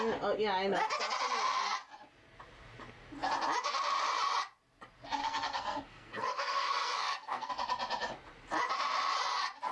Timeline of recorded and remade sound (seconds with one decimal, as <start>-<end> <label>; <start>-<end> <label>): 0.0-5.2 recorded; 5.2-7.5 remade; 7.5-9.7 recorded